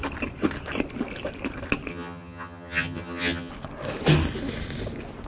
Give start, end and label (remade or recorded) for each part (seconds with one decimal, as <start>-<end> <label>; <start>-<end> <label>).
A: 0.0-1.9 recorded; 1.9-3.5 remade; 3.5-5.3 recorded